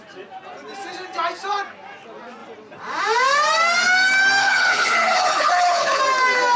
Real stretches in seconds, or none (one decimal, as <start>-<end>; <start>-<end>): 0.0-4.4; 6.0-6.6